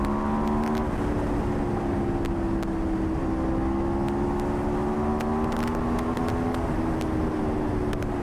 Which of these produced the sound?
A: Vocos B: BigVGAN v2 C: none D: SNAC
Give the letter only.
C